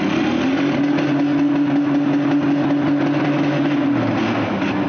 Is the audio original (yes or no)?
yes